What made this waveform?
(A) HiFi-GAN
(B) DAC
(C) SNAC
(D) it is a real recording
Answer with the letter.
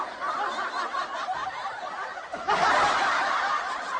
D